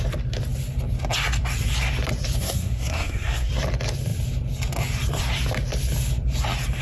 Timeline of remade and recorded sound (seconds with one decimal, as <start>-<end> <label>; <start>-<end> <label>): 0.0-2.4 recorded; 2.4-3.5 remade; 3.5-6.8 recorded